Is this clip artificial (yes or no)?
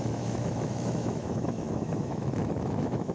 yes